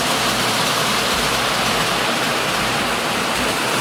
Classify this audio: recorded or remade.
remade